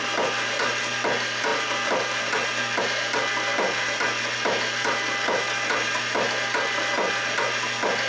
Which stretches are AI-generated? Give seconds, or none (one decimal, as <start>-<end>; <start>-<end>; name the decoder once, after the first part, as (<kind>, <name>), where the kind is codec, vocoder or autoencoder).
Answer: none